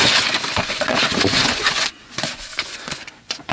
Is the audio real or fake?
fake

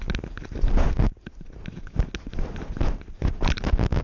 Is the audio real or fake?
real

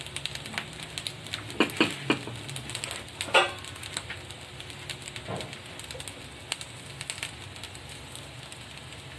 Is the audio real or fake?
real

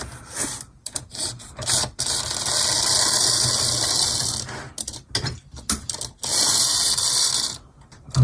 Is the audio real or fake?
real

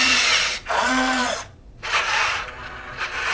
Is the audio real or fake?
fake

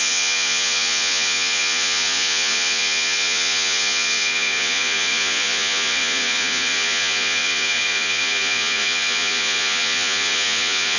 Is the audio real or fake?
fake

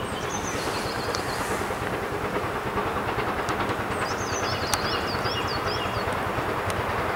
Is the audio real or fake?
real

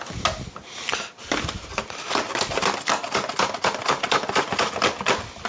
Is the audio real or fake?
real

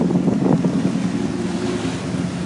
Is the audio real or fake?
real